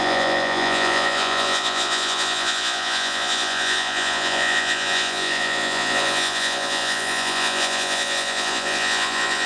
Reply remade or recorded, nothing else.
remade